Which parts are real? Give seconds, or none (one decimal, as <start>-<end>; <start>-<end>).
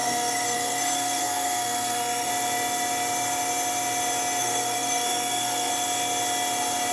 2.3-4.4; 5.7-6.9